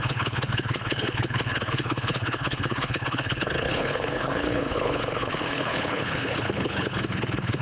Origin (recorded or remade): remade